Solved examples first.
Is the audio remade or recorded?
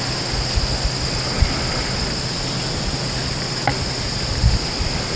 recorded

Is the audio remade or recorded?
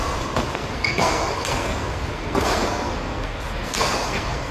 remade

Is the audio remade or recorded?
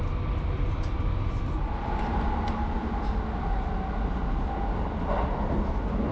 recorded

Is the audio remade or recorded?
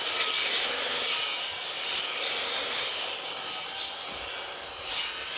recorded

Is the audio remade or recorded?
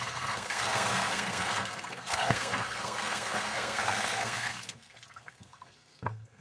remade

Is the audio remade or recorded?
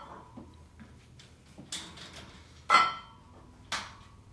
recorded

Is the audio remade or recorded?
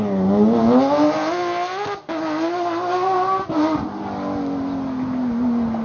recorded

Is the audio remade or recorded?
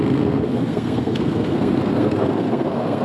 remade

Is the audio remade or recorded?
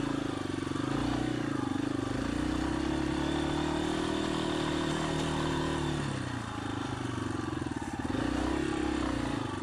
recorded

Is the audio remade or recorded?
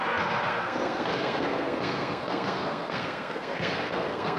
remade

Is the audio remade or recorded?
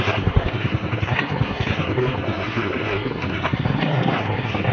remade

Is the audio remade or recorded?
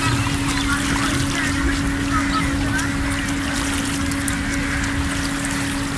recorded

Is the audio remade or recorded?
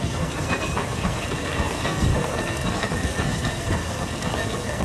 remade